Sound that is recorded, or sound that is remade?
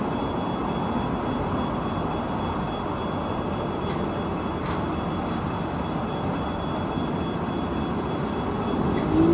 recorded